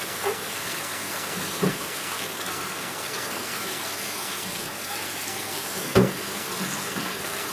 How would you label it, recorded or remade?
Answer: remade